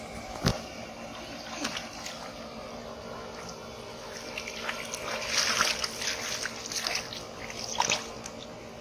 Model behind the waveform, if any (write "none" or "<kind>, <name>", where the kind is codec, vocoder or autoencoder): none